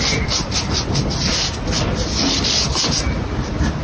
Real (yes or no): yes